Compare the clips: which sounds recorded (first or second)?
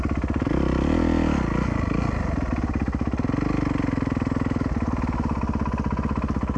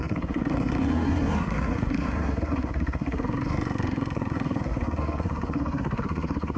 first